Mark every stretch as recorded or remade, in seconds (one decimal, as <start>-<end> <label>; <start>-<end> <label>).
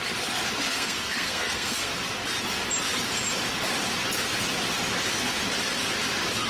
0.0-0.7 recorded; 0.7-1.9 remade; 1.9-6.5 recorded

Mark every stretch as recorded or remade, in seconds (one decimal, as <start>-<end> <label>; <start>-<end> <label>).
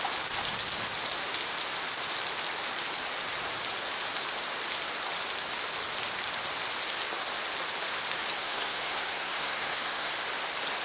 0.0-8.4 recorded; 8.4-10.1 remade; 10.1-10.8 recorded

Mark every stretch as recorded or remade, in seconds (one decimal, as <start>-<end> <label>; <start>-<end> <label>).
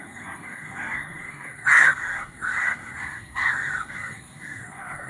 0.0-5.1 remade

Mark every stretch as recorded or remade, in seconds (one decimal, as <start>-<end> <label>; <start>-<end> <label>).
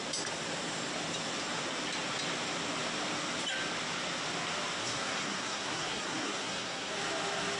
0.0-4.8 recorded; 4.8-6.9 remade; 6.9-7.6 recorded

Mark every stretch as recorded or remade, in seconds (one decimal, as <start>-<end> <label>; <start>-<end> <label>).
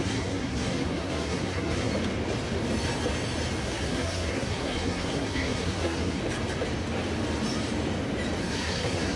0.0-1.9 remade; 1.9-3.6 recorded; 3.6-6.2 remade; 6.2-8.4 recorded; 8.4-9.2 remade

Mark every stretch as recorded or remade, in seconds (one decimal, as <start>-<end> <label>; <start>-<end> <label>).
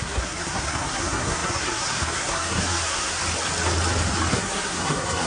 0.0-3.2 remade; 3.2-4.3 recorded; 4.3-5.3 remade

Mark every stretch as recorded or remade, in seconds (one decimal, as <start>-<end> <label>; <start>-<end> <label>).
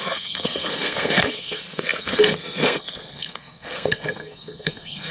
0.0-5.1 remade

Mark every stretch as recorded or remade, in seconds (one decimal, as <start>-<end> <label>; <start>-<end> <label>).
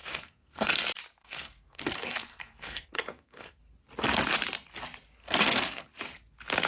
0.0-0.7 remade; 0.7-1.2 recorded; 1.2-3.6 remade; 3.6-5.2 recorded; 5.2-5.8 remade; 5.8-6.7 recorded